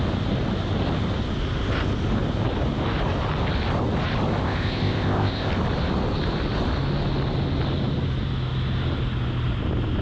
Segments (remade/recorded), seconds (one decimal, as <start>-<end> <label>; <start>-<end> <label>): 0.0-4.4 recorded; 4.4-5.5 remade; 5.5-10.0 recorded